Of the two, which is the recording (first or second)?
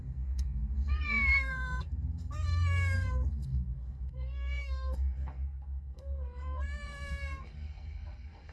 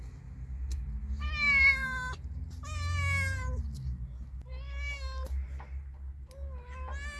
second